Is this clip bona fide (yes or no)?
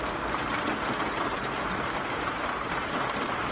yes